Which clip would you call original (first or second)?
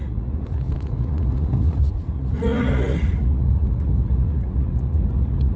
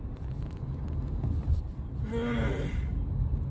second